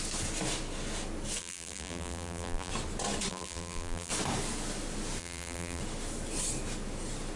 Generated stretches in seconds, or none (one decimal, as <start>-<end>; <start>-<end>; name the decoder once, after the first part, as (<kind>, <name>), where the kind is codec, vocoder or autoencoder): 1.4-2.7 (vocoder, BigVGAN v2); 3.3-4.1; 5.2-5.8